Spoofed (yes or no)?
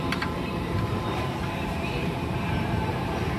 yes